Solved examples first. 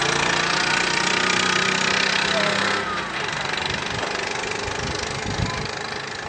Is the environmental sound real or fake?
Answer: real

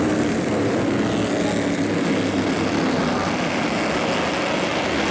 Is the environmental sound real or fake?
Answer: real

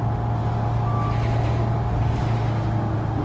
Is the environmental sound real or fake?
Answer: real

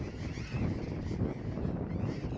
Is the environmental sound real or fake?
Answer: real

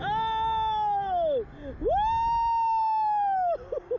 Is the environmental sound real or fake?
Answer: real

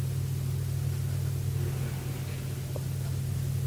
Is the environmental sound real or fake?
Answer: real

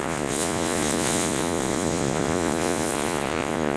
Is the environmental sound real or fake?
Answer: fake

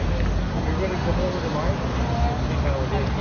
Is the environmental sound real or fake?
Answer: real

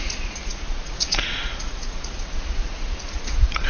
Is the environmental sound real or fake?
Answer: fake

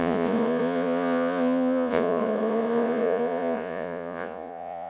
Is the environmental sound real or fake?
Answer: fake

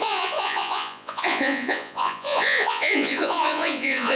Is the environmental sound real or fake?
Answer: fake